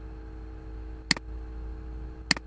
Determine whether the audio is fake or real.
real